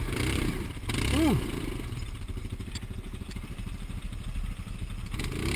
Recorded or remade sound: remade